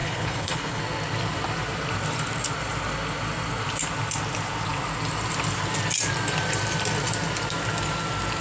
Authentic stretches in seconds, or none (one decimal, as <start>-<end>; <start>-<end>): 0.8-8.4